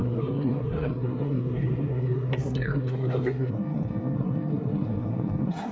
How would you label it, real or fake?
fake